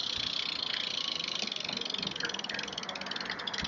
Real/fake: real